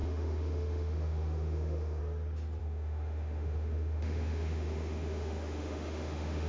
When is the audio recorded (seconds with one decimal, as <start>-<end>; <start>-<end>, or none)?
2.0-2.6